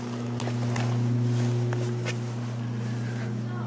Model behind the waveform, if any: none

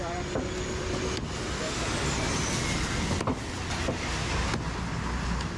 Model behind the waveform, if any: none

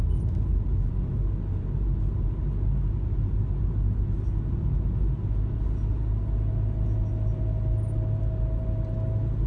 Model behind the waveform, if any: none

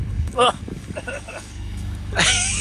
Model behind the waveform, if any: codec, DAC